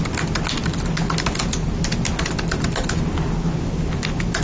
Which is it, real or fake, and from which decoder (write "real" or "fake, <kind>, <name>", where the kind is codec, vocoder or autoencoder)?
real